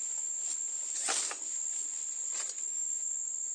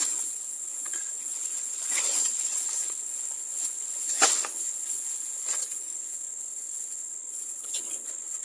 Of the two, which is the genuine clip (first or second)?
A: first